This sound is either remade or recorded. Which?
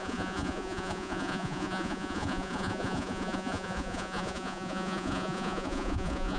remade